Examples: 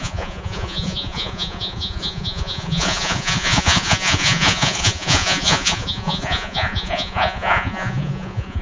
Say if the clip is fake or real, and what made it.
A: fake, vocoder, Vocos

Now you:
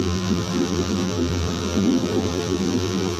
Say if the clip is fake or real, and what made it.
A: fake, vocoder, BigVGAN v2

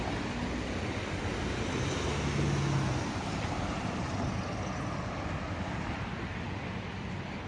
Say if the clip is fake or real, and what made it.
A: real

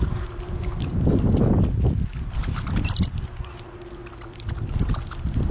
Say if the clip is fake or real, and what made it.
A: fake, vocoder, BigVGAN v2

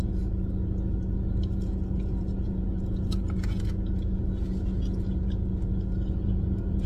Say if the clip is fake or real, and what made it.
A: fake, vocoder, Vocos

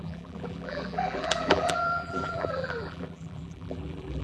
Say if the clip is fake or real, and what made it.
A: fake, vocoder, BigVGAN v2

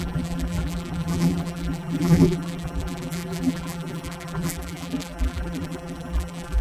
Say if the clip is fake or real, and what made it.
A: fake, vocoder, BigVGAN v2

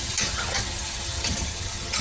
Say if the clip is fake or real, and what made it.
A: fake, vocoder, HiFi-GAN